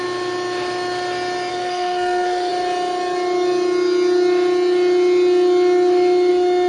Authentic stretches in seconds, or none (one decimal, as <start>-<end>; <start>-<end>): 0.0-1.5; 2.5-6.7